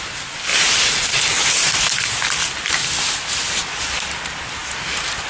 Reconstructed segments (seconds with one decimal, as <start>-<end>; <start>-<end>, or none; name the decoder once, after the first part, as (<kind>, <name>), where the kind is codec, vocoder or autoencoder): 0.5-1.9 (vocoder, BigVGAN v2)